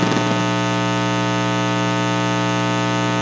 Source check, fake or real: real